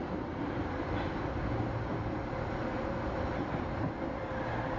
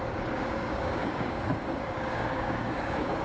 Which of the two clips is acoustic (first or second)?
first